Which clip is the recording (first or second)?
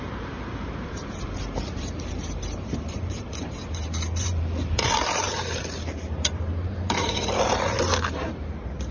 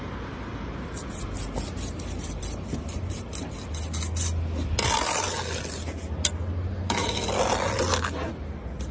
second